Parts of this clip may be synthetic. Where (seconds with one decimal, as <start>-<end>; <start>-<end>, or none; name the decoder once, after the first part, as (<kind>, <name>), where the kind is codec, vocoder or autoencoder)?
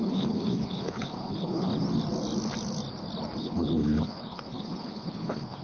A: 0.0-1.7 (codec, HILCodec); 3.4-5.6